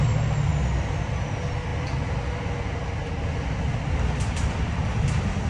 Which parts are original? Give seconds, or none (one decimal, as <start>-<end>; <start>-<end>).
0.0-5.5